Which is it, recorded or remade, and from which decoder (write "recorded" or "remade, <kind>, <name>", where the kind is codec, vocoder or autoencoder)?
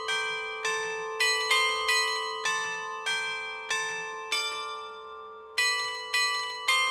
recorded